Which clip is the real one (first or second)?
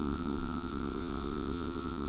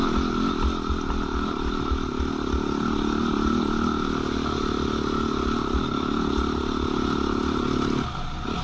second